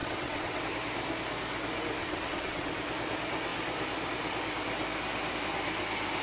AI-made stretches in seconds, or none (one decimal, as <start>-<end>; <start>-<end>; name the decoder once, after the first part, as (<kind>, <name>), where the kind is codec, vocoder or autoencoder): 0.0-0.6 (vocoder, WaveNeXt); 2.0-2.7

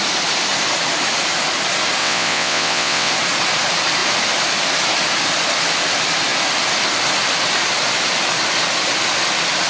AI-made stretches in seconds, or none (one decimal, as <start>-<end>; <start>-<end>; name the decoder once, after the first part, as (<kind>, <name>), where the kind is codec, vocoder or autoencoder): 2.0-3.1 (vocoder, WaveNeXt)

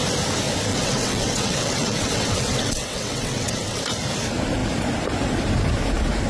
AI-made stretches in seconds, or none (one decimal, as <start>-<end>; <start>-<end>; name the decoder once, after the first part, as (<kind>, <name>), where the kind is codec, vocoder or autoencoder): 0.7-3.8 (vocoder, WaveNeXt)

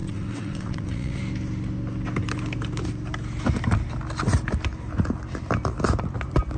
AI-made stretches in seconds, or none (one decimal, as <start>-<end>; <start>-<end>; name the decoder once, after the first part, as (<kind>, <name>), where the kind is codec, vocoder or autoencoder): 0.0-1.2 (vocoder, WaveNeXt)

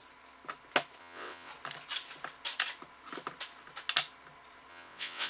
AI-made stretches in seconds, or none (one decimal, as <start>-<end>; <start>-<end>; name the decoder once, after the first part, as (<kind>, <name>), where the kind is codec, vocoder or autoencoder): 1.0-1.5 (vocoder, WaveNeXt); 4.7-5.3

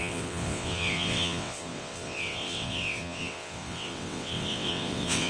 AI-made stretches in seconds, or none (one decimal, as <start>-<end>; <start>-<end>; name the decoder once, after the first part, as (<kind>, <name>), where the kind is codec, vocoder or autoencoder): 0.0-5.3 (vocoder, WaveNeXt)

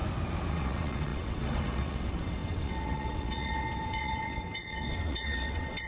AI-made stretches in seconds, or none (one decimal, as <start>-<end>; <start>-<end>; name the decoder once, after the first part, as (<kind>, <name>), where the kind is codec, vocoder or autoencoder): 0.5-5.9 (vocoder, WaveNeXt)